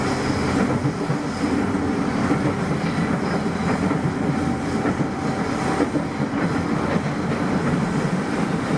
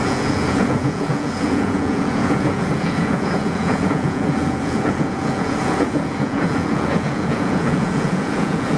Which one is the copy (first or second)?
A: second